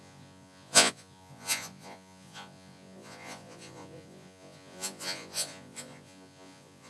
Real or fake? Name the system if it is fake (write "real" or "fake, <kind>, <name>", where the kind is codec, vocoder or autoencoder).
fake, vocoder, Vocos